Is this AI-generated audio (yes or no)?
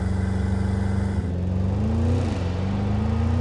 no